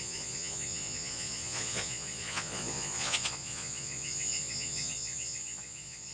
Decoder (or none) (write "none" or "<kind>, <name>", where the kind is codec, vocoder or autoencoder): vocoder, Vocos